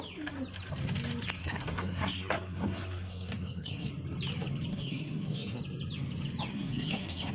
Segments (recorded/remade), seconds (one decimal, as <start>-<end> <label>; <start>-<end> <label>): 0.0-1.4 recorded; 1.4-3.9 remade; 3.9-4.7 recorded; 4.7-5.6 remade; 5.6-6.5 recorded; 6.5-7.3 remade